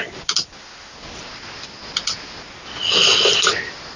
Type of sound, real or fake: real